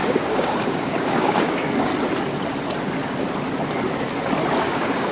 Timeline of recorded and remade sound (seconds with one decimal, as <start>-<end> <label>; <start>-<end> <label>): 0.0-1.9 remade; 1.9-4.6 recorded; 4.6-5.1 remade